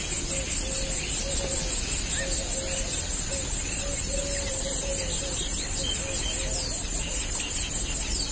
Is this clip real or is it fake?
real